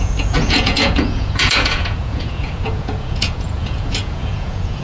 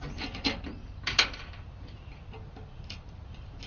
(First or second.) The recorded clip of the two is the second